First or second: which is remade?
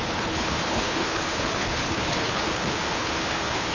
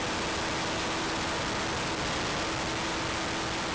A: first